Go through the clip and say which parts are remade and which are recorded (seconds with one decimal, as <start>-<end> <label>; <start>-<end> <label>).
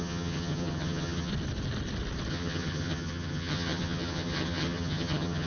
0.0-1.3 remade; 1.3-2.3 recorded; 2.3-5.5 remade